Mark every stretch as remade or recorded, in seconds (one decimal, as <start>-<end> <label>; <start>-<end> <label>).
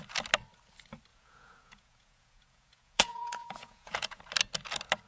0.0-1.1 recorded; 1.1-4.2 remade; 4.2-5.1 recorded